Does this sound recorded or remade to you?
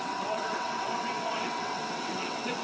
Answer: remade